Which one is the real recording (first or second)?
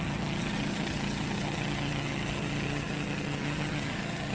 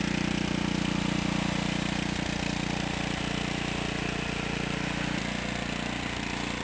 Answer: second